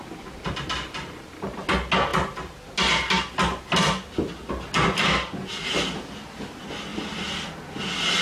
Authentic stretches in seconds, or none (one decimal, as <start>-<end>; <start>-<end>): 0.0-8.2